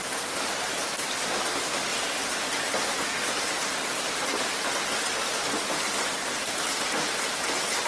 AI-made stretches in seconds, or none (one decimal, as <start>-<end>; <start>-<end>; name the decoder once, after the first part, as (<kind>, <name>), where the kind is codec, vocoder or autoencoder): none